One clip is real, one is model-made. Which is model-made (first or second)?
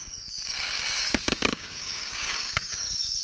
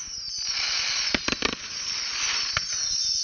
first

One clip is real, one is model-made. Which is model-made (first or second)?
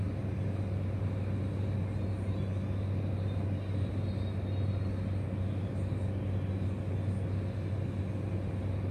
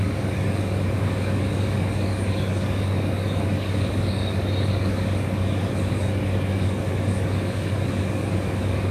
second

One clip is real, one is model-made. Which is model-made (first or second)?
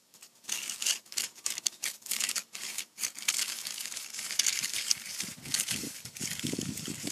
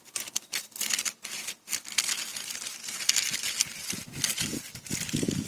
first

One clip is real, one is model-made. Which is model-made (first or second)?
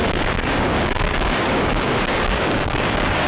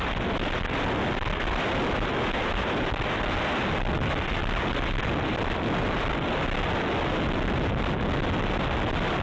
first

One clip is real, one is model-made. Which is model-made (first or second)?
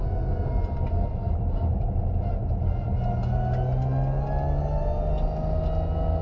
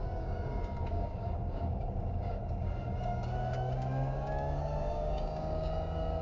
second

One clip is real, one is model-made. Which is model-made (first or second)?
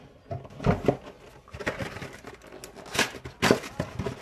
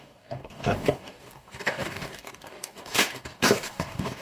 second